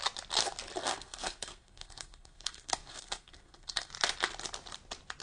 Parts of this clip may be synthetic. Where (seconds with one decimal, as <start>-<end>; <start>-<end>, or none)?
0.8-3.9